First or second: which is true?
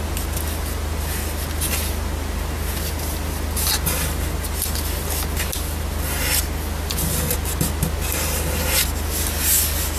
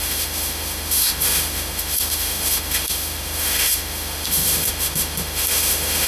first